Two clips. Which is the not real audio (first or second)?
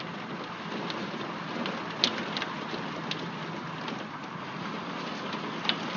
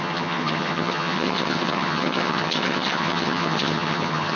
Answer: second